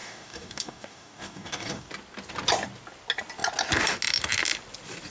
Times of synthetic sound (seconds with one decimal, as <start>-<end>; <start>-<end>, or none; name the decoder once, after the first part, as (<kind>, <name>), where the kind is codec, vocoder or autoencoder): 0.0-1.9 (codec, DAC)